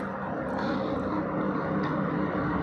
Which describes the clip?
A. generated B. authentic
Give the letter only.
B